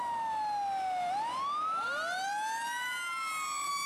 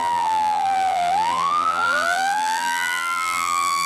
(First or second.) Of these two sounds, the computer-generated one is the second